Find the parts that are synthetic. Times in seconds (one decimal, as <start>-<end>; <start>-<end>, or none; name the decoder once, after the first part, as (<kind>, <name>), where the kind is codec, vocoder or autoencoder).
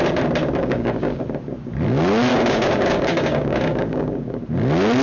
0.6-1.2 (codec, DAC); 2.3-4.4